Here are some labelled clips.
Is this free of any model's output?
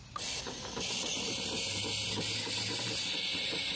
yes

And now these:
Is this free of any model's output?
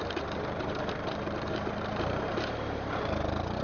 no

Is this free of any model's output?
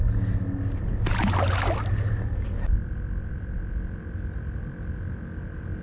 yes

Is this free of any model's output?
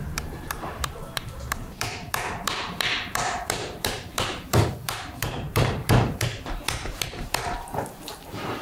no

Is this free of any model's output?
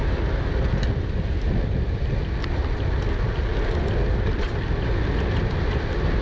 yes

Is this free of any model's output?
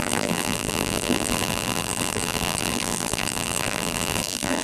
no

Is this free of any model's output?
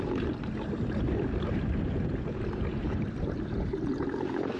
no